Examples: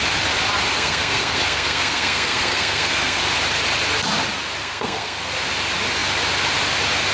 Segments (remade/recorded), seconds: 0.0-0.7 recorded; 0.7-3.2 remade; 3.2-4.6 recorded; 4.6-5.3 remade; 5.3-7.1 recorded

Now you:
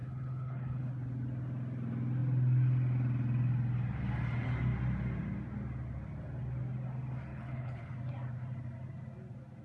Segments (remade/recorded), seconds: 0.0-0.9 remade; 0.9-7.3 recorded; 7.3-7.9 remade; 7.9-9.6 recorded

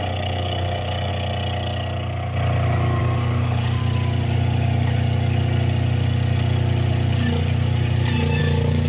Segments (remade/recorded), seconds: 0.0-1.1 remade; 1.1-3.0 recorded; 3.0-3.8 remade; 3.8-8.4 recorded; 8.4-8.9 remade